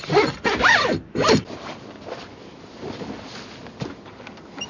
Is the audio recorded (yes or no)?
yes